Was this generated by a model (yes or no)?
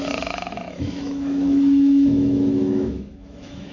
yes